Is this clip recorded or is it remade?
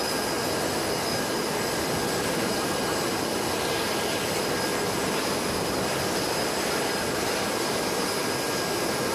recorded